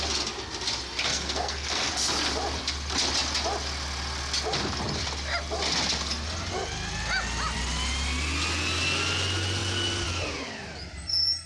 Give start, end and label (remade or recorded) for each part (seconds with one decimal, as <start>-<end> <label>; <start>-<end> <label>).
0.0-1.1 recorded; 1.1-1.9 remade; 1.9-11.5 recorded